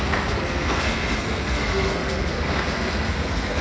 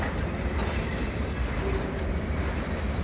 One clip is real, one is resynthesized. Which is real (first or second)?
second